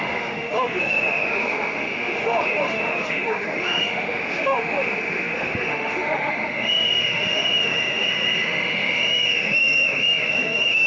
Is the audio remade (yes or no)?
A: yes